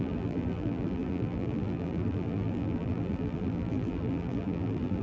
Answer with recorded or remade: remade